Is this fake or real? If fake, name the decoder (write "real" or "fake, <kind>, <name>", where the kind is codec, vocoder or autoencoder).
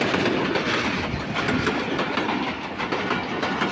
real